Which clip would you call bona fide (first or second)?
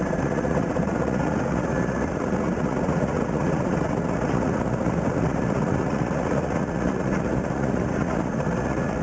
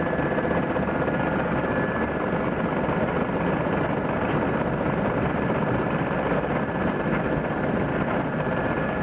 second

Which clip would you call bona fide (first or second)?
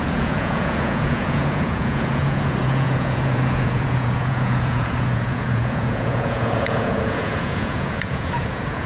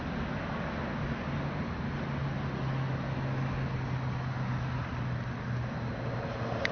second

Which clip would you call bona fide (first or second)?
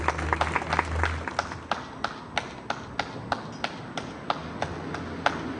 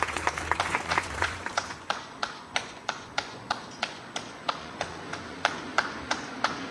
first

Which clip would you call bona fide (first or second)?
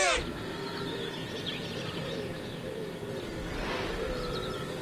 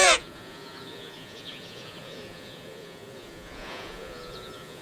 first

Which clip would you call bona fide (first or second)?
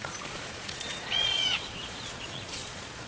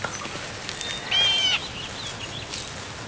second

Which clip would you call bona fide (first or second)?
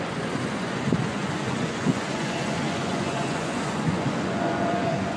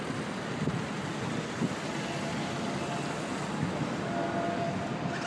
second